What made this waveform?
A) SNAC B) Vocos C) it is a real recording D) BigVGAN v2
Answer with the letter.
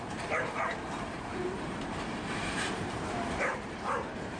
D